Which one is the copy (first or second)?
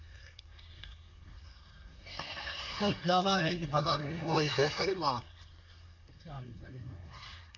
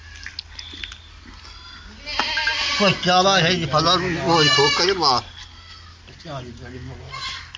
first